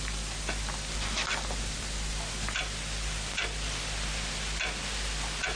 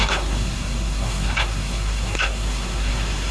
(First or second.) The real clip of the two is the first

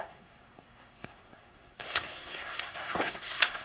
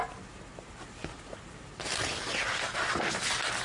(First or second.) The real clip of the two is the second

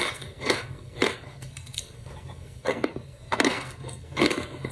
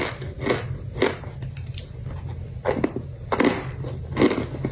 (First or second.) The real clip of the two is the second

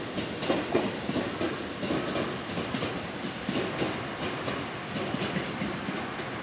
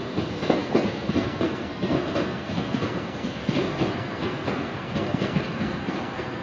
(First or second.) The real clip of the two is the first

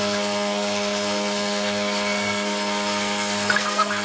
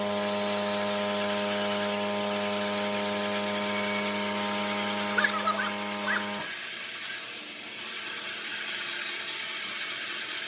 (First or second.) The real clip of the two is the second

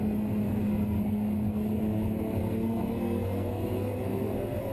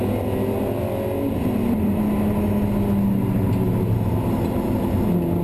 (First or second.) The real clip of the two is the second